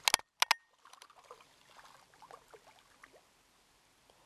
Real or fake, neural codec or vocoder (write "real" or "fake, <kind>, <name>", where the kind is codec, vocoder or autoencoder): real